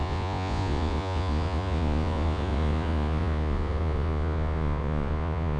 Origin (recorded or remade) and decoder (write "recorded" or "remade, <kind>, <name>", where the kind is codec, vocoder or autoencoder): remade, vocoder, Vocos